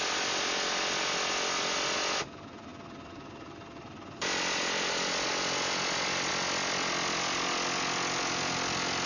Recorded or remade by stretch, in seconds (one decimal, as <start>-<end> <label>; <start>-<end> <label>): 0.0-9.1 recorded